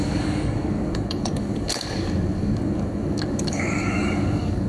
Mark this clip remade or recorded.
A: remade